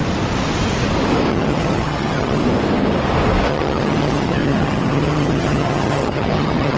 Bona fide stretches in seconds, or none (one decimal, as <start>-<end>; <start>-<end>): 0.0-1.3; 2.4-3.5

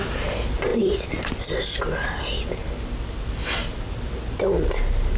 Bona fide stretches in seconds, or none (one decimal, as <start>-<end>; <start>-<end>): 0.0-5.2

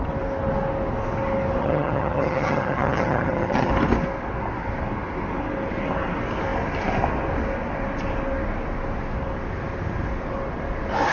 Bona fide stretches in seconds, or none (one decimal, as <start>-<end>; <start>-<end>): 0.0-1.6; 3.7-11.1

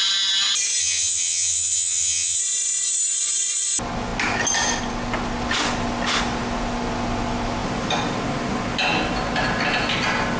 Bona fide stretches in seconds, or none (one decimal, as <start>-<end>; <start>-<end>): 0.0-0.8; 2.4-10.4

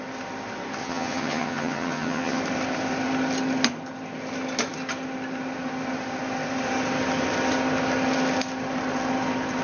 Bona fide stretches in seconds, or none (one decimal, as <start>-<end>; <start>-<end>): 0.0-0.8; 2.4-9.6

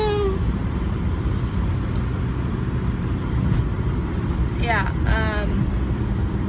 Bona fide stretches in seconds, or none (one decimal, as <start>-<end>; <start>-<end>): 0.0-6.5